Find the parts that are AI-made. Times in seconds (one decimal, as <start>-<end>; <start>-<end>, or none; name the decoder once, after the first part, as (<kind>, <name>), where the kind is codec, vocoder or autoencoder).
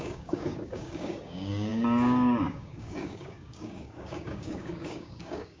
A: 0.0-5.6 (codec, DAC)